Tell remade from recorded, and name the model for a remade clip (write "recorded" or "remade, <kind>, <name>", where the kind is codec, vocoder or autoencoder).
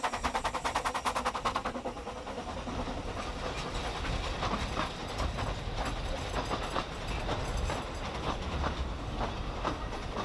recorded